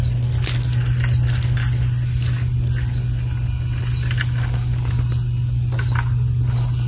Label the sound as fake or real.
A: real